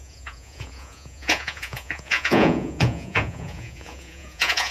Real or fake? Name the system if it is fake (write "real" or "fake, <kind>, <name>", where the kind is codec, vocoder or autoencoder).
fake, vocoder, Vocos